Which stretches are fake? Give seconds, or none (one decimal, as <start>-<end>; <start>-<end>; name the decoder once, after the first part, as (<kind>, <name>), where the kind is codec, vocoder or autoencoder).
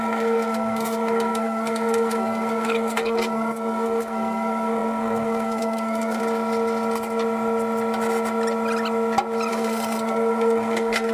0.0-6.2 (codec, SNAC); 9.5-11.1